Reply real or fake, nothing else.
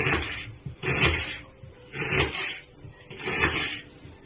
real